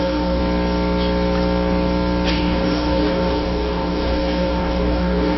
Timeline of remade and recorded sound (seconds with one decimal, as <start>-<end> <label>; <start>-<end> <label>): 0.0-0.4 remade; 0.4-2.3 recorded; 2.3-5.4 remade